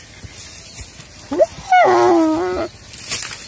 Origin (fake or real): real